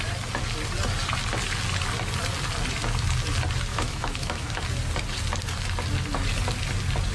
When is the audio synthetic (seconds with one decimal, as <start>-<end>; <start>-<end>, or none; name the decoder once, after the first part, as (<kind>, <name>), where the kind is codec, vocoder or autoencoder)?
3.7-4.6 (autoencoder, DAC-VAE)